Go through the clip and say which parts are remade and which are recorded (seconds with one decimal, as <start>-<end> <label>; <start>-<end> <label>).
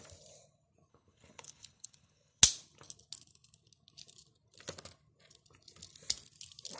0.0-0.9 recorded; 0.9-2.4 remade; 2.4-6.8 recorded